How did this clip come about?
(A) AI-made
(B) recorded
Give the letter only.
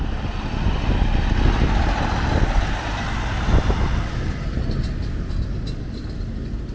B